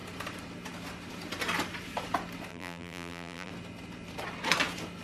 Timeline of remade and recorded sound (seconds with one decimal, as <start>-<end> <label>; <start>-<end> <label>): 0.0-2.5 recorded; 2.5-3.5 remade; 3.5-5.0 recorded